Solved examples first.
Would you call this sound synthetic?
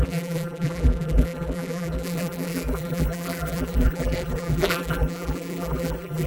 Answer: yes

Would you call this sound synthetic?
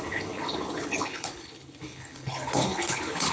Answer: yes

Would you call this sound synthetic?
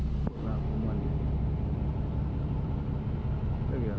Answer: no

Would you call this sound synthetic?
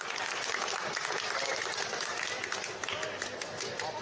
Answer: no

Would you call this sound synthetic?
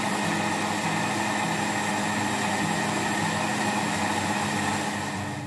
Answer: no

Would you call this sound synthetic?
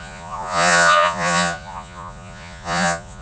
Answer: yes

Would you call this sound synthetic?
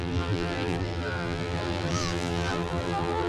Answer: yes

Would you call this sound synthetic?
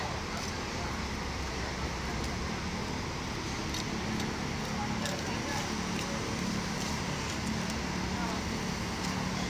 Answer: no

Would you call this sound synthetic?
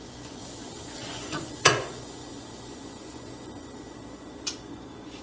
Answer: yes